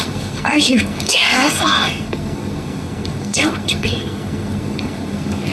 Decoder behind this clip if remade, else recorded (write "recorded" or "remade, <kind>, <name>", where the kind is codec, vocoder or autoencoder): remade, codec, SNAC